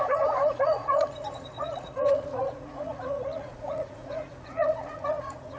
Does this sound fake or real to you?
fake